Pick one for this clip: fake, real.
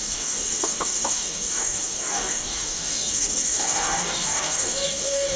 fake